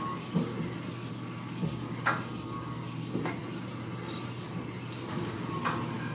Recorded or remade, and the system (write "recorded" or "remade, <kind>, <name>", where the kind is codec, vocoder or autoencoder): recorded